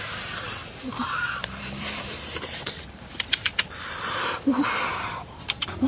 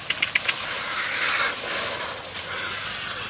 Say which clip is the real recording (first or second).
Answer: second